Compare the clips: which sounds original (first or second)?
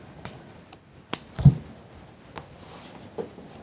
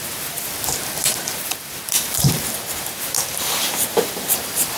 first